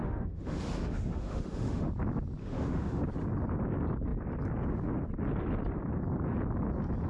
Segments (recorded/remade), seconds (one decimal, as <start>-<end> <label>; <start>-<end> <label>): 0.0-1.9 remade; 1.9-2.4 recorded; 2.4-3.0 remade; 3.0-7.1 recorded